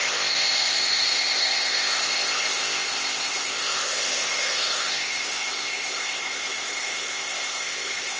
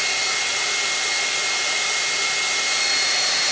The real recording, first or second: second